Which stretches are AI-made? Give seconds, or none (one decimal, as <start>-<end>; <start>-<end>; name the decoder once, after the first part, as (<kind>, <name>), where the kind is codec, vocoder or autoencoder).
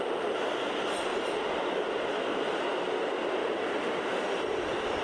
1.1-2.5 (vocoder, BigVGAN v2); 3.4-5.0